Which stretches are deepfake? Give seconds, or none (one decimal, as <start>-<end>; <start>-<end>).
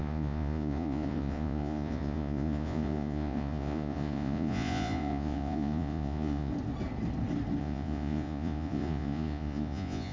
0.0-6.5; 7.6-10.1